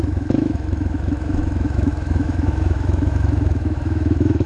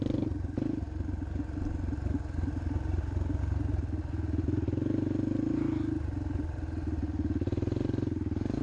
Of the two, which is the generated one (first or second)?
first